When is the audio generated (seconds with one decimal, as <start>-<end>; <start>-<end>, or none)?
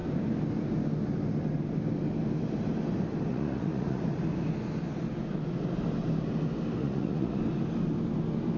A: 3.3-4.0; 6.8-7.4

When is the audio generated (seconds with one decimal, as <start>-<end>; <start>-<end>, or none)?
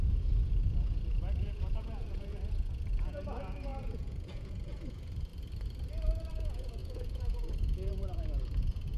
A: 0.0-5.3; 6.3-9.0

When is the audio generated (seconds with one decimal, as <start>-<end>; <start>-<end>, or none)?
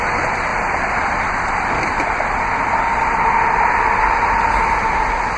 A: 0.5-3.7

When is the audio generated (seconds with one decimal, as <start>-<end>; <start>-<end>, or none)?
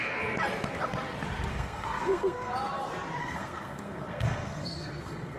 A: 1.5-2.5; 3.2-5.4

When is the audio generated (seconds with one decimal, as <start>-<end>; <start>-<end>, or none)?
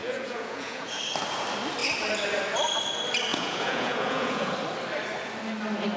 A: 0.0-1.0; 3.3-4.5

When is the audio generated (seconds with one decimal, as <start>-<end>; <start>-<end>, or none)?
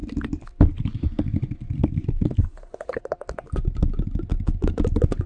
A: 2.4-3.0